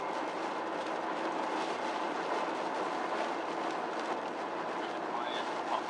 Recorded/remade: recorded